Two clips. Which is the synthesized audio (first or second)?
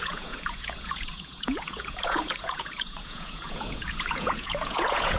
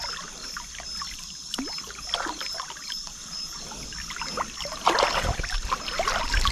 first